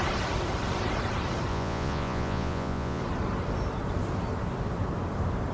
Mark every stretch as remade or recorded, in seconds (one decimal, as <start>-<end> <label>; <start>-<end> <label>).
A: 0.0-1.5 recorded; 1.5-3.0 remade; 3.0-5.5 recorded